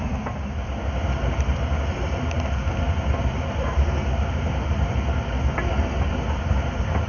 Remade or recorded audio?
recorded